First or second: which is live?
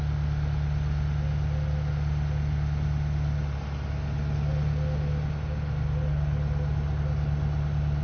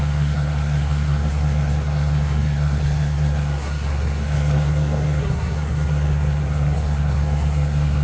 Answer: first